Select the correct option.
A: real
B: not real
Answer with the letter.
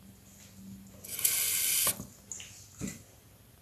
A